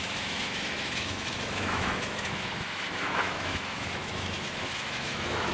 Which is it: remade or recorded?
remade